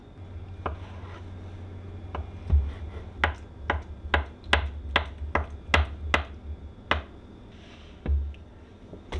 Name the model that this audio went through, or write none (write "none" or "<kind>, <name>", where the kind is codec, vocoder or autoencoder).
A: none